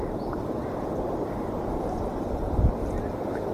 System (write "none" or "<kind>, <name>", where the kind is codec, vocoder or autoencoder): none